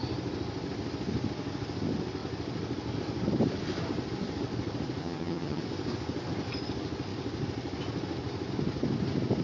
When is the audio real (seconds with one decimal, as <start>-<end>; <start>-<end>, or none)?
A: 0.0-5.0; 5.6-9.4